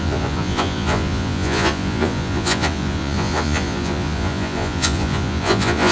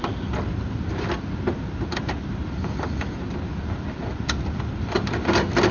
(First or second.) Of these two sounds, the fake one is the first